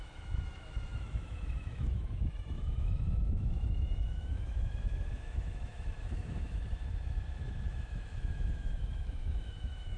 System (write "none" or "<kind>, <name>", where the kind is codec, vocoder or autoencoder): autoencoder, DAC-VAE